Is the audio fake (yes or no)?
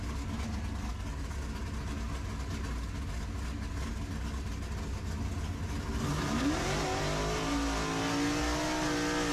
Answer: no